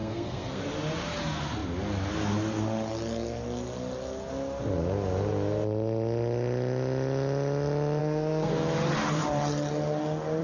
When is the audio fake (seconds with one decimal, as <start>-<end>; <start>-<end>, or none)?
0.0-0.6; 8.0-8.5